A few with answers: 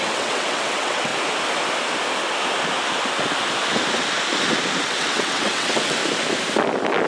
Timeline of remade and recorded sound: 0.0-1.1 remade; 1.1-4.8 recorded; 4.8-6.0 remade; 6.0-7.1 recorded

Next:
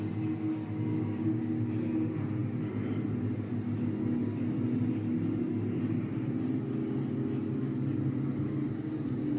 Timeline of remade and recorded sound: 0.0-0.9 recorded; 0.9-1.4 remade; 1.4-9.4 recorded

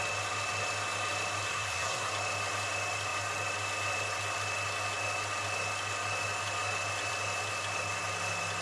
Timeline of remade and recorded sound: 0.0-1.5 recorded; 1.5-2.1 remade; 2.1-8.6 recorded